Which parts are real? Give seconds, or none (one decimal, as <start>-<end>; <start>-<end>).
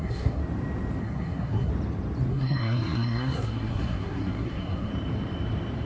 0.4-1.0; 1.7-2.3; 4.9-5.9